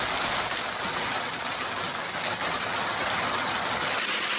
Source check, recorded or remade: recorded